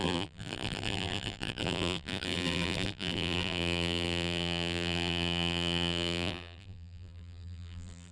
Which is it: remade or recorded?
remade